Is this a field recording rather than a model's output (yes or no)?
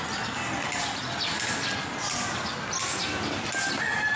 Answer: yes